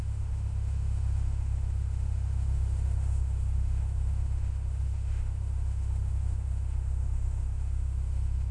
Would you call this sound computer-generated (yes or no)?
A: yes